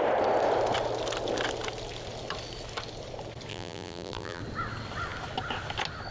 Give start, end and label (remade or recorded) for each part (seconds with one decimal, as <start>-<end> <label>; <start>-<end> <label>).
0.0-3.5 recorded; 3.5-4.4 remade; 4.4-6.1 recorded